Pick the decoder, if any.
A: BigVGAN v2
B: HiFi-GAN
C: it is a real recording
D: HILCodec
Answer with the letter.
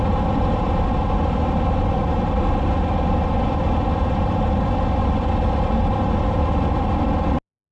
C